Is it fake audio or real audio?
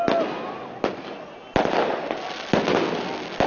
real